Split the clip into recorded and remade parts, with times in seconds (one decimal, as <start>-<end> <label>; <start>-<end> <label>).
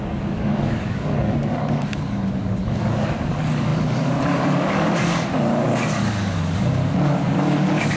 0.0-8.0 remade